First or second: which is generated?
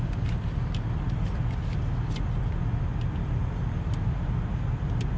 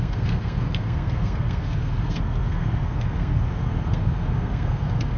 second